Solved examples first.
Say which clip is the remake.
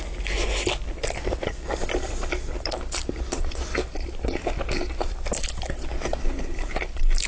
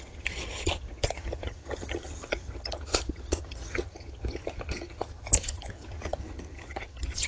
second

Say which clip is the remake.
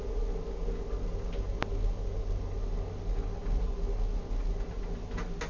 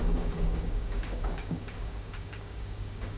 second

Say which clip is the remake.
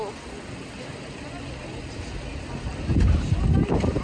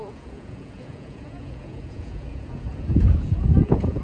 second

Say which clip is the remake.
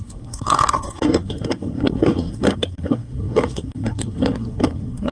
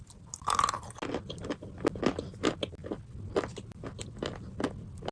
first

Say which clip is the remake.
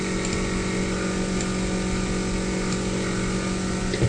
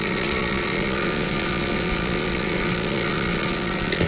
second